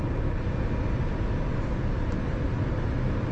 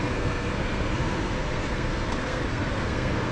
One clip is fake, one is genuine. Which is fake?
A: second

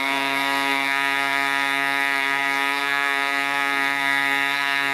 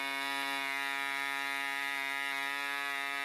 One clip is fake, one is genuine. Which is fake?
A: first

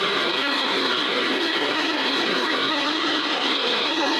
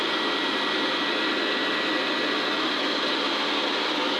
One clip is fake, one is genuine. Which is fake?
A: first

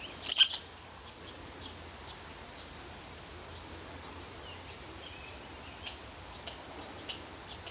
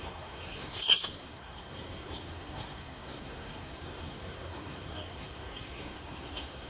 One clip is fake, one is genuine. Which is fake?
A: second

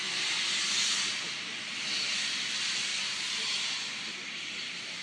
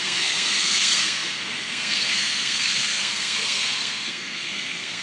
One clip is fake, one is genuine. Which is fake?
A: second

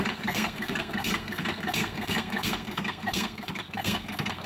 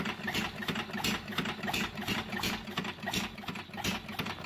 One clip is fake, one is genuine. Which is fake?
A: first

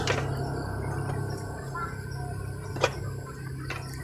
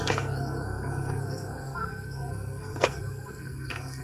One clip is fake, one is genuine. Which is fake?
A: second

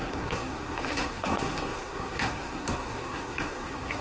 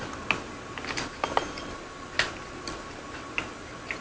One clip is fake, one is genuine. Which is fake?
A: first